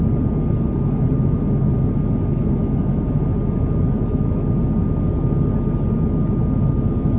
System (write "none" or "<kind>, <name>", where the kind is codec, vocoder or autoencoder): none